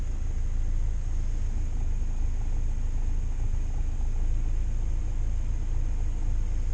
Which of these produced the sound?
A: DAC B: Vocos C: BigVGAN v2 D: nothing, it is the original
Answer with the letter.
D